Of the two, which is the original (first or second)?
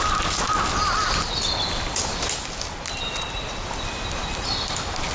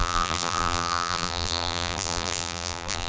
first